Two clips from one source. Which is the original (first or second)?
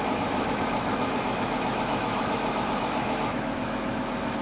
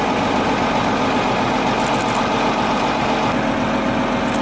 second